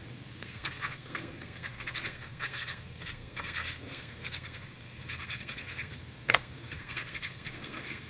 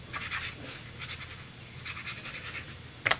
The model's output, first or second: first